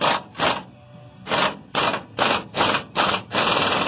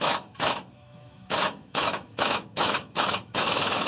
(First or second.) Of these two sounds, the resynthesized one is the second